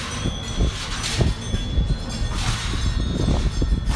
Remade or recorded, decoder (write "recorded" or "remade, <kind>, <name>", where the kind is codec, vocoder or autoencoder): recorded